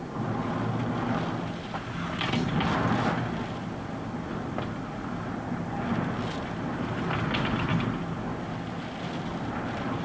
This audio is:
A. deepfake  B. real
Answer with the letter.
B